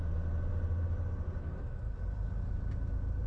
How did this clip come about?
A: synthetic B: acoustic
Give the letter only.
B